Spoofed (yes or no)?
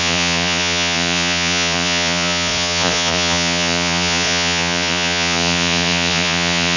yes